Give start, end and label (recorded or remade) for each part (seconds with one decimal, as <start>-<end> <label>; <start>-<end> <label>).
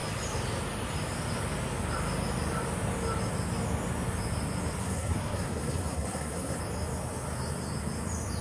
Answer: 0.0-4.8 recorded; 4.8-6.6 remade; 6.6-8.4 recorded